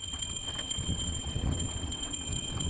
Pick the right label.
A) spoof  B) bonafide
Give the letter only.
A